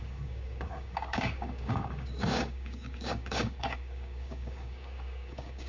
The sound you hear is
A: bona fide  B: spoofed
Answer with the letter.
B